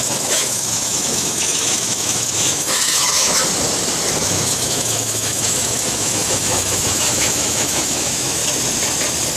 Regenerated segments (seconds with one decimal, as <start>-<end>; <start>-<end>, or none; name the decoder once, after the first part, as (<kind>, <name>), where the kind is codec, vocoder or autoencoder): 0.0-3.4 (autoencoder, DAC-VAE); 4.2-8.4